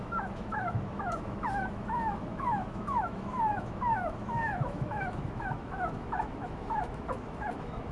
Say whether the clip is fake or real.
fake